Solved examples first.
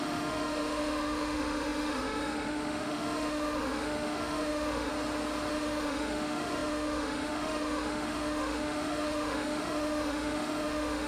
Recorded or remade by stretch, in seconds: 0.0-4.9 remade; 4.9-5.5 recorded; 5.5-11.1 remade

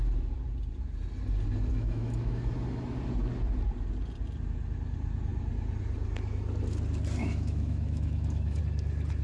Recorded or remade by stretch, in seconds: 0.0-1.7 recorded; 1.7-2.5 remade; 2.5-7.2 recorded; 7.2-8.6 remade; 8.6-9.2 recorded

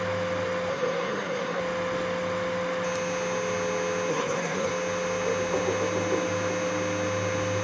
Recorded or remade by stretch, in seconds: 0.0-0.7 recorded; 0.7-1.6 remade; 1.6-4.1 recorded; 4.1-4.7 remade; 4.7-7.6 recorded

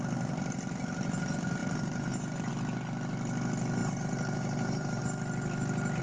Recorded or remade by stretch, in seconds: 0.0-1.6 recorded; 1.6-2.5 remade; 2.5-3.8 recorded; 3.8-5.0 remade; 5.0-6.0 recorded

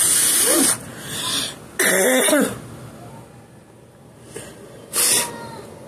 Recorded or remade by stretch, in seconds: 0.0-5.9 recorded